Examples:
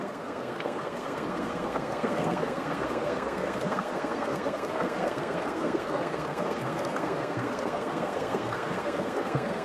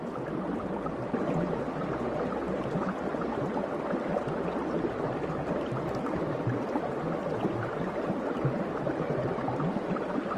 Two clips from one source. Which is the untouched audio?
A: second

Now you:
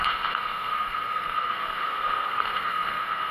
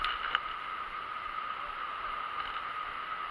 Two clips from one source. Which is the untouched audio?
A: second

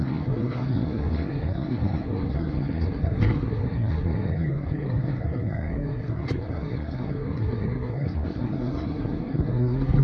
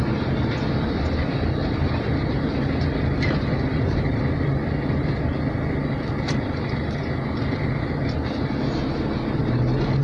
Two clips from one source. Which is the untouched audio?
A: second